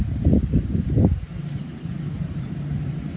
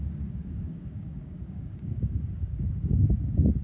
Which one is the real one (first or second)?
first